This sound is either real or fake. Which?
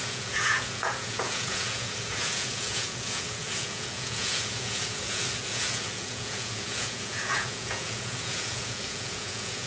fake